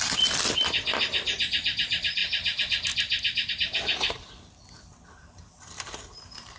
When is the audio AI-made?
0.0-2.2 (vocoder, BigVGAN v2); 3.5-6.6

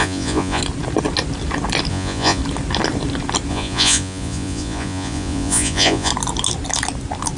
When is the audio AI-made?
0.0-0.6 (vocoder, Vocos); 1.9-2.4; 3.5-6.1

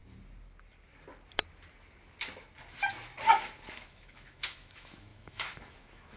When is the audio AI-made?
3.7-6.2 (autoencoder, DAC-VAE)

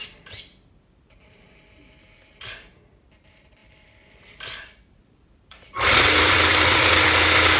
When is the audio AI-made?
3.6-6.9 (vocoder, BigVGAN v2)

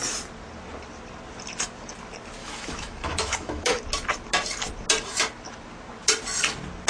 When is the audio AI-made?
2.4-3.8 (autoencoder, DAC-VAE)

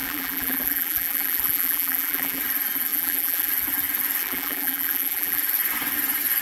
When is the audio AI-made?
0.0-2.4 (vocoder, BigVGAN v2); 2.9-3.5; 4.2-5.4

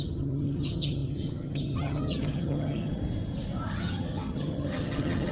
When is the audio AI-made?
0.0-3.0 (vocoder, HiFi-GAN); 3.8-5.3